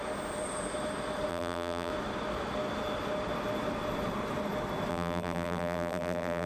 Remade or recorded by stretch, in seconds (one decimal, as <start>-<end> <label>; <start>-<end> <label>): 0.0-1.3 recorded; 1.3-1.9 remade; 1.9-4.9 recorded; 4.9-6.5 remade